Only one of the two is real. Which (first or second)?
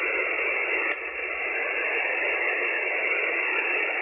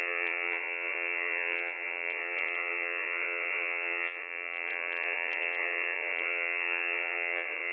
first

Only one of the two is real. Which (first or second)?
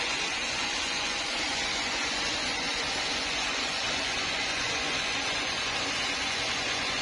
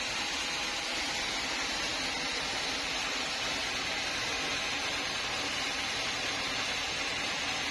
second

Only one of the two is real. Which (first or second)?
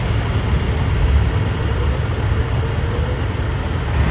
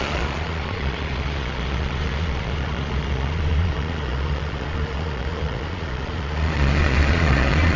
first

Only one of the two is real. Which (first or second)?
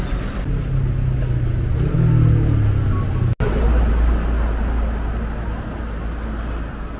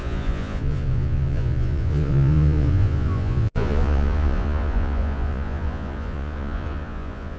first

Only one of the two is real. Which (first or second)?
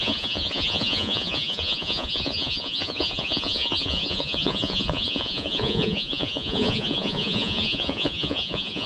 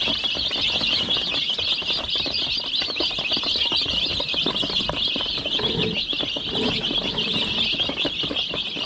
second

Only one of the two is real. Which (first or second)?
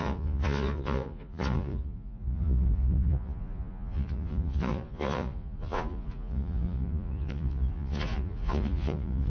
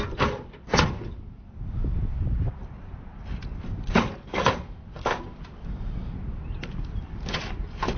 second